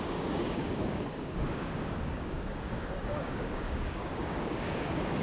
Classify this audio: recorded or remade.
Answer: remade